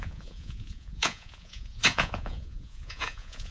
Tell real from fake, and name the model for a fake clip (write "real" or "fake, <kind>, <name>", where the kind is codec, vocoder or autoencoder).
fake, vocoder, Vocos